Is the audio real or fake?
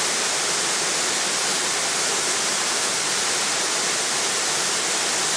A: real